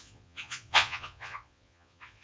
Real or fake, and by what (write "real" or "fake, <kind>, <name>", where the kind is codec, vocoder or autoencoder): fake, vocoder, Vocos